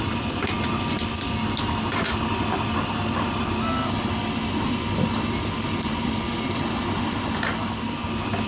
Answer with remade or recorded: recorded